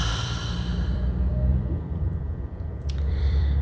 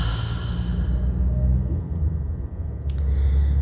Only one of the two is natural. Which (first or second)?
second